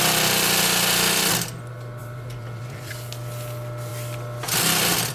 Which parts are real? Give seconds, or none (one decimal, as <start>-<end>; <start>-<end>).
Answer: 0.0-2.0; 2.9-5.1